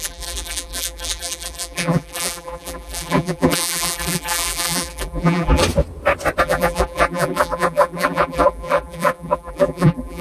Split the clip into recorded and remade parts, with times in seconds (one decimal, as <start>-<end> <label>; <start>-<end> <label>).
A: 0.0-5.6 remade; 5.6-6.4 recorded; 6.4-10.2 remade